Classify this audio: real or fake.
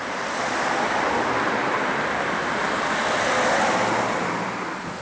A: real